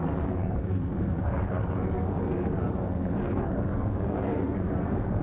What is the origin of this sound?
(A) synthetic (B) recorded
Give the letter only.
A